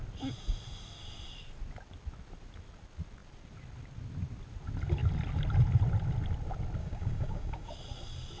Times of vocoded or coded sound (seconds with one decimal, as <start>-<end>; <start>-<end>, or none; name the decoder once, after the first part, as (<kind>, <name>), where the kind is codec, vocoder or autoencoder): 6.8-7.7 (codec, DAC)